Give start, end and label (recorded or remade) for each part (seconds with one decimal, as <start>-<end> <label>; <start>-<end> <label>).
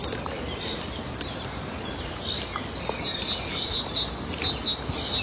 0.0-5.2 recorded